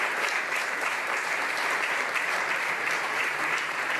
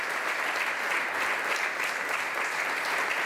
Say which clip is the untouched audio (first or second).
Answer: second